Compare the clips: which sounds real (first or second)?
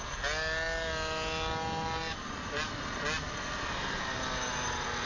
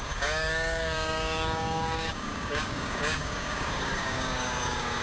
first